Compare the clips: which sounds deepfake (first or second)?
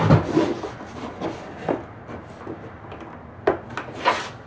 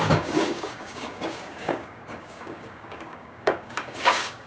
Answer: second